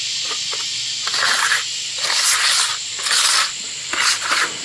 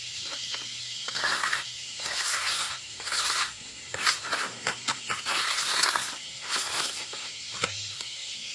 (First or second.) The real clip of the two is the first